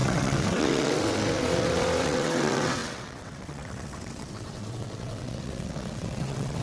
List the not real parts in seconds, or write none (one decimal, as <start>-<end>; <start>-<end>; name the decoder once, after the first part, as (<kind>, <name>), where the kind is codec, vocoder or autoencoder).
0.0-6.6 (vocoder, WaveNeXt)